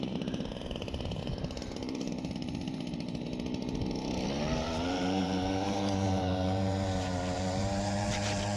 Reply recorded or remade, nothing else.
remade